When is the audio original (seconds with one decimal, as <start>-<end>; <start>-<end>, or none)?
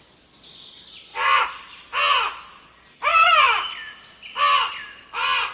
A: 0.0-1.1; 1.9-5.5